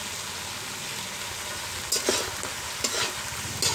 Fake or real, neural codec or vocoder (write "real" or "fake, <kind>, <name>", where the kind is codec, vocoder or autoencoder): real